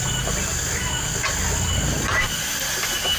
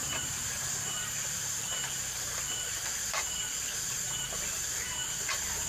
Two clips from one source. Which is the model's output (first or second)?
second